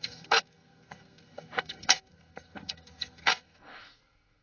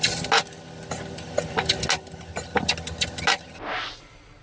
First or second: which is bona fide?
second